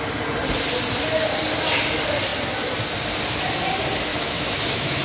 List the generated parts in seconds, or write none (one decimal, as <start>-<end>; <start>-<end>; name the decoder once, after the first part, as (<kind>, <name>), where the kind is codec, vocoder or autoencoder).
4.1-5.0 (autoencoder, DAC-VAE)